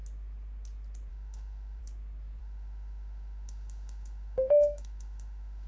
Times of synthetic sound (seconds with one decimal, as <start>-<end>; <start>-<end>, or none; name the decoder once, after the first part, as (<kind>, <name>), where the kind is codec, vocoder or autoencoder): 1.1-1.8 (autoencoder, DAC-VAE); 2.4-5.7